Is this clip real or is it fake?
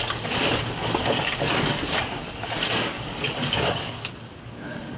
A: fake